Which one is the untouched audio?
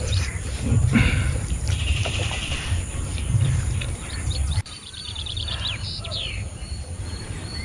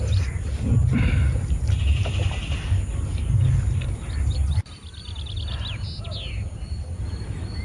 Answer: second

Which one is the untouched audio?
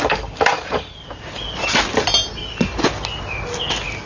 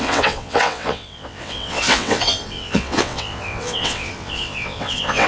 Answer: first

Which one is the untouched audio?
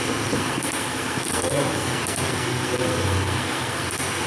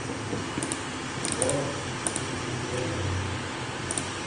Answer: second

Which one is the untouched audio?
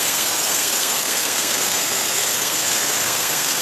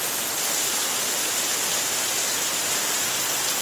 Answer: second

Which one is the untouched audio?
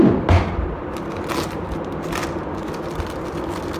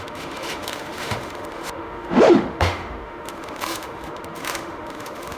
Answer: first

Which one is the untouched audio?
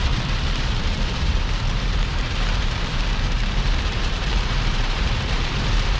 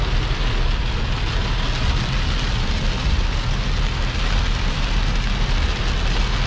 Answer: second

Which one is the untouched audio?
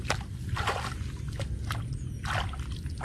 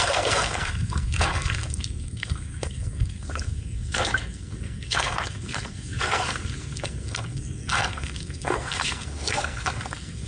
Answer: first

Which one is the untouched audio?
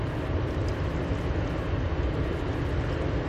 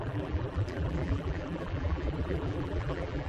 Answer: first